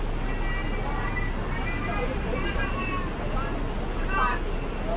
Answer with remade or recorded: recorded